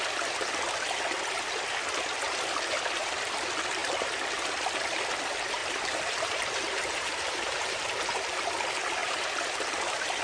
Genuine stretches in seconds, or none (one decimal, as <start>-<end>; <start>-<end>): 0.0-5.6; 7.8-9.0